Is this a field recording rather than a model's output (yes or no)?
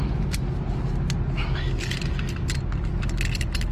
yes